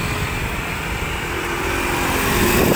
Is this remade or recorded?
recorded